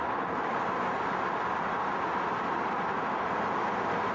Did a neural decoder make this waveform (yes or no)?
no